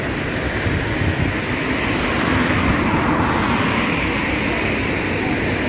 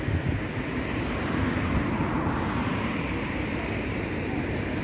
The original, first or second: first